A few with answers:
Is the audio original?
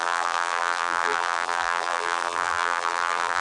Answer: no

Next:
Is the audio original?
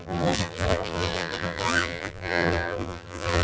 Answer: no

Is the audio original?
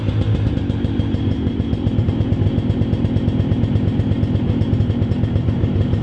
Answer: no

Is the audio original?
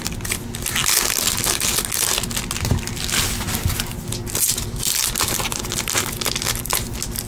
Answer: yes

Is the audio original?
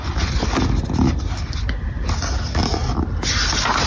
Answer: yes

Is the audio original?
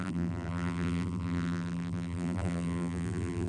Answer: no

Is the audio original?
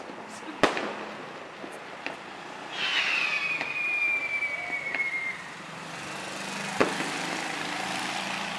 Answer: yes